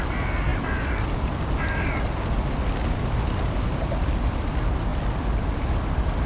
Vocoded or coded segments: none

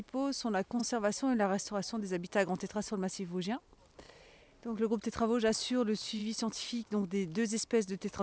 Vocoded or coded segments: none

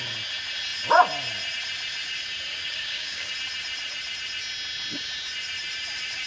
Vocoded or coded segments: 2.5-3.3 (codec, DAC)